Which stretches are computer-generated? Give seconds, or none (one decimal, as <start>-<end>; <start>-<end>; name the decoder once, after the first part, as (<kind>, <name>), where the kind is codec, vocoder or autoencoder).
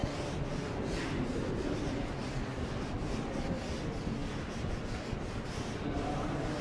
none